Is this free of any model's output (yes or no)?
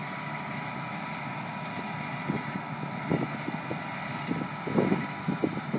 yes